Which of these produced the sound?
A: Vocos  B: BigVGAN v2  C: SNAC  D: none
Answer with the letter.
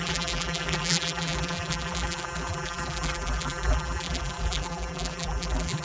B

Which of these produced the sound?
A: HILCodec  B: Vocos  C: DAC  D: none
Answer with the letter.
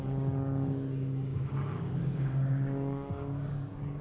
C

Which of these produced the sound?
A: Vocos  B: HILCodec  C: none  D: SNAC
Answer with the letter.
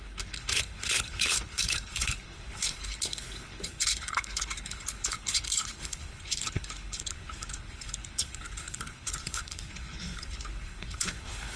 B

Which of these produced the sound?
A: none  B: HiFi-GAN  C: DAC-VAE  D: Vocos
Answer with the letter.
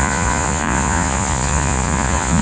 D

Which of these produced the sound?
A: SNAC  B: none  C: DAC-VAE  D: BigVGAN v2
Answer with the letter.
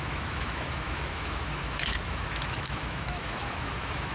C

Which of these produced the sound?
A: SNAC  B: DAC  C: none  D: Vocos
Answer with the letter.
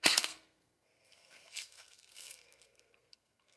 A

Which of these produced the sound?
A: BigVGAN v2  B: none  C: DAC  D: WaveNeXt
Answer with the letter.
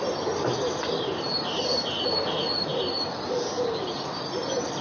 B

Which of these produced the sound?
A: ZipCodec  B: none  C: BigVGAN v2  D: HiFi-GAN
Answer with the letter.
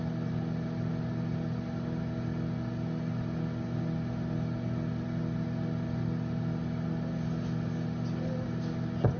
B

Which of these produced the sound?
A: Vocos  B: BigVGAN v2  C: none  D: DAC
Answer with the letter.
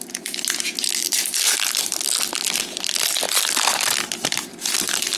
C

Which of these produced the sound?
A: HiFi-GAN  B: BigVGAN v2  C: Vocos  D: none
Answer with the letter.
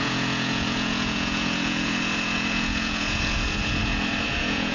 C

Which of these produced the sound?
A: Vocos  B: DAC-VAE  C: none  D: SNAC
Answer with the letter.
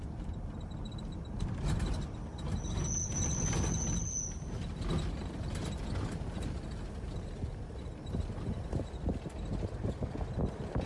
C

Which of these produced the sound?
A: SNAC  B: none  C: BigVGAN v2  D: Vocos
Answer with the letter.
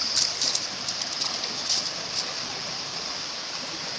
B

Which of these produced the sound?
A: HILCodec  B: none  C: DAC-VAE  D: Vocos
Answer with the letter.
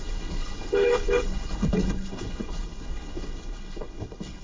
A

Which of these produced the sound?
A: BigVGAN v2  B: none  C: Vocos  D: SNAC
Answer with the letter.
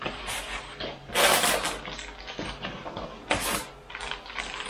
B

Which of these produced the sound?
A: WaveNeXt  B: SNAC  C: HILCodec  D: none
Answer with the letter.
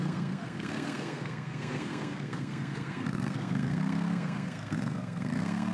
B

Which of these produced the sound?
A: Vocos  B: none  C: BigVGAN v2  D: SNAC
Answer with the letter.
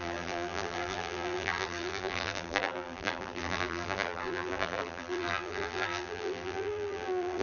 C